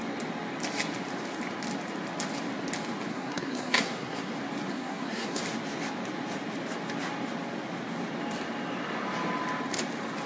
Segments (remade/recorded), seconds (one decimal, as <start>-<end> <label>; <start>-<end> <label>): 0.0-3.1 recorded; 3.1-4.3 remade; 4.3-4.7 recorded; 4.7-5.4 remade; 5.4-10.3 recorded